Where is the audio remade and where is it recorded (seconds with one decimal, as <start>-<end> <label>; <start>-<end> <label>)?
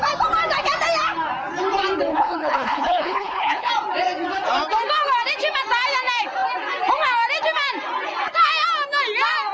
0.0-2.1 recorded; 2.1-3.7 remade; 3.7-9.5 recorded